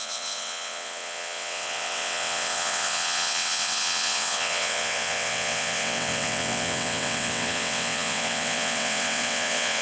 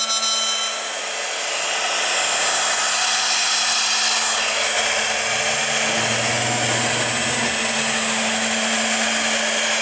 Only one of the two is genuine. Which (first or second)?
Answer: second